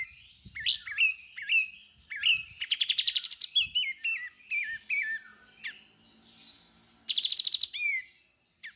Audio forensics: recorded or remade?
recorded